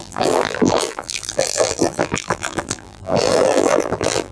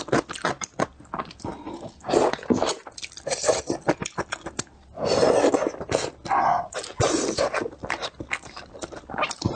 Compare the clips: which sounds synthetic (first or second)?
first